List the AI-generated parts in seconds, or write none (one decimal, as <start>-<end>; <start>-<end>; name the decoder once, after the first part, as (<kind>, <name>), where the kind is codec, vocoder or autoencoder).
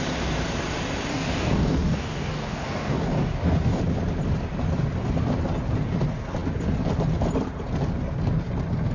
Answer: 1.1-3.8 (codec, DAC)